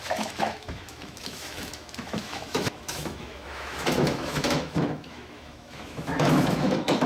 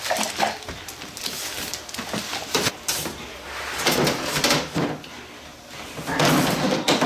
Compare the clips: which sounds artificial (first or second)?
first